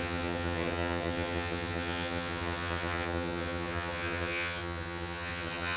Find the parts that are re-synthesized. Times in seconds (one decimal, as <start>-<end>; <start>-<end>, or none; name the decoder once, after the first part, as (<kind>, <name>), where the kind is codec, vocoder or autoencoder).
0.0-5.8 (vocoder, HiFi-GAN)